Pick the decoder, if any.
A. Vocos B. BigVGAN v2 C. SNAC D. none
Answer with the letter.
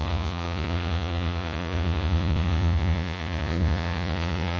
A